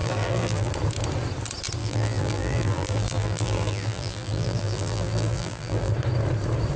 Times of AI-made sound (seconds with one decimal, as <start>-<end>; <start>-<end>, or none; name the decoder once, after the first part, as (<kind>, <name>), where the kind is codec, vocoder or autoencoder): 0.0-0.7 (vocoder, BigVGAN v2); 1.8-5.9